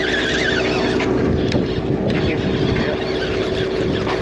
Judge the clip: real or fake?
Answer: real